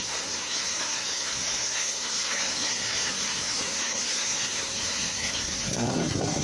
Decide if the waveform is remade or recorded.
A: remade